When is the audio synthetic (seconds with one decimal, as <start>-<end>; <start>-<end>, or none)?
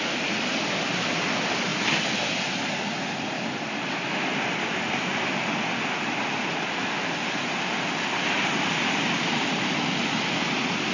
none